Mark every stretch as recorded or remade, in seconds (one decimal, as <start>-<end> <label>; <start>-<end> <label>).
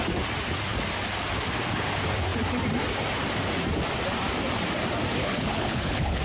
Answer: 0.0-5.2 recorded; 5.2-6.2 remade